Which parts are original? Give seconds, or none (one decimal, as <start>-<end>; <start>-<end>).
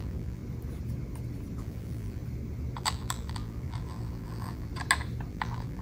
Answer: 0.4-1.6; 2.2-2.8; 4.7-5.3